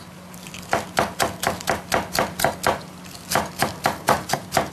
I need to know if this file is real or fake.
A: real